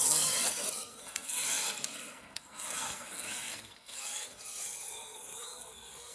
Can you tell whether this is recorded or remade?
remade